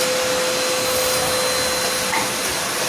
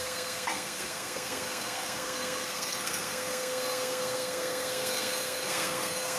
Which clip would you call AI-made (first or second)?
second